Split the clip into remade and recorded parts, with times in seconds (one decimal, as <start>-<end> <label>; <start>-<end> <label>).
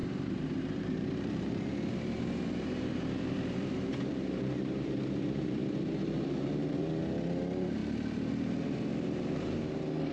0.0-10.1 remade